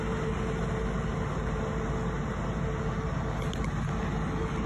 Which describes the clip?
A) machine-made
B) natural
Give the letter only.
B